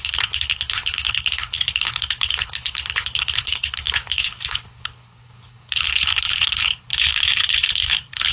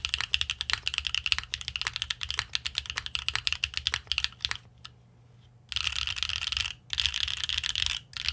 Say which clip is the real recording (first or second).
second